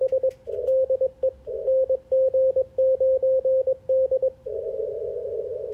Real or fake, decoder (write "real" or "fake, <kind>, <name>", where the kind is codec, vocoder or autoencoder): real